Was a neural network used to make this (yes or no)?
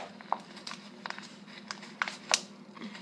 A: no